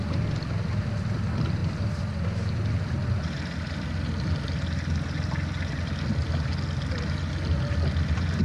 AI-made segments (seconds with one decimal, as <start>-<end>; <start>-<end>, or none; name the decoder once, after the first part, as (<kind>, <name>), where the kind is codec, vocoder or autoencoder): none